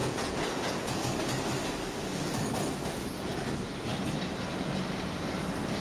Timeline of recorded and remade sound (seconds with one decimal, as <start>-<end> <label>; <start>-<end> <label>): 0.0-1.0 remade; 1.0-5.8 recorded